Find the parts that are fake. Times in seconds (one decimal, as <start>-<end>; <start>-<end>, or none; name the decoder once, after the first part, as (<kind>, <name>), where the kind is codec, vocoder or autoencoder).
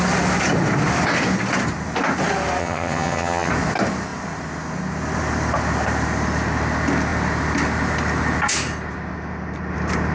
2.6-3.5 (vocoder, HiFi-GAN)